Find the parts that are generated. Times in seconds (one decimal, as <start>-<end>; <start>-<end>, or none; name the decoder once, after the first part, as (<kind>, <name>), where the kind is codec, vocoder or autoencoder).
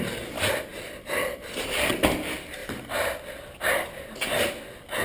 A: none